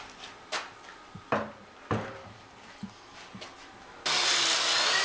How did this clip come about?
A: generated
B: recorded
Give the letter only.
B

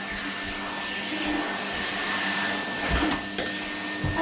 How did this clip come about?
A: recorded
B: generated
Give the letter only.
A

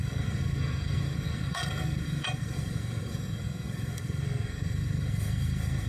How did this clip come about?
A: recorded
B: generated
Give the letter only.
B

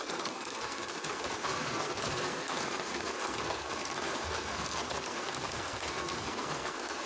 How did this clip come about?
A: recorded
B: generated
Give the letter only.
B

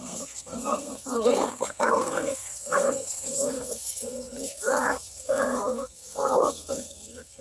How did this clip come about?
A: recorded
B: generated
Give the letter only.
B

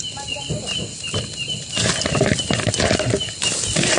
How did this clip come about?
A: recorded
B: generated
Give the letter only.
A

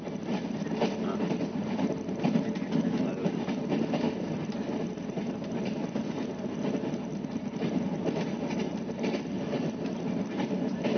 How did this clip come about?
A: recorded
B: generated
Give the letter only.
A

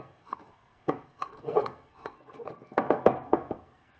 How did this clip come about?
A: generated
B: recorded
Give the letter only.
A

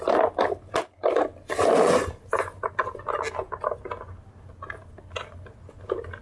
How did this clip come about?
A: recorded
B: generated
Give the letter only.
A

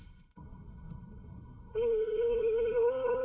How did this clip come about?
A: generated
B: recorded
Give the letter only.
A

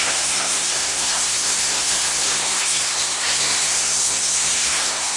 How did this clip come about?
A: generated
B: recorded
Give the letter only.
A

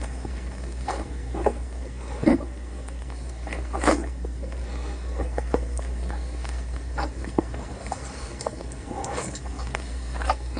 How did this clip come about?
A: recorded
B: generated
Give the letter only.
B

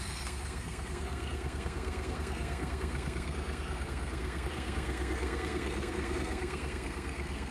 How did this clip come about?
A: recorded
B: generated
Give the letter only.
B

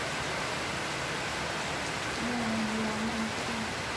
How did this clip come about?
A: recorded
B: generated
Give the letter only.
A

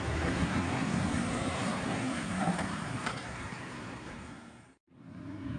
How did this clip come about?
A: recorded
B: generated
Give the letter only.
B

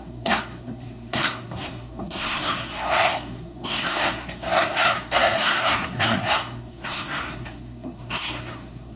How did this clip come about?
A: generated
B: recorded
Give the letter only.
A